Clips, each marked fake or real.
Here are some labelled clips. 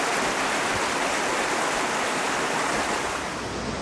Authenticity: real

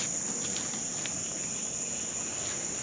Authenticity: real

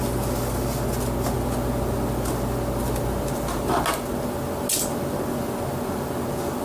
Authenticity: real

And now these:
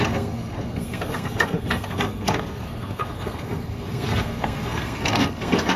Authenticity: fake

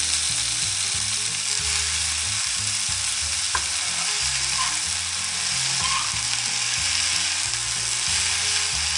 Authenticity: real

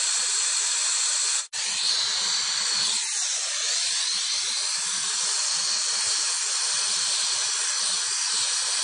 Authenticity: real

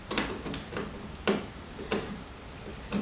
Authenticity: real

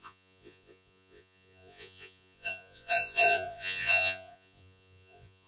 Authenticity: fake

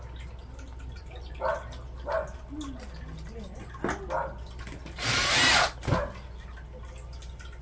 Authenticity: real